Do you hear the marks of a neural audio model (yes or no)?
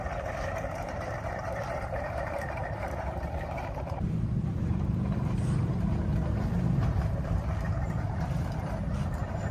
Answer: yes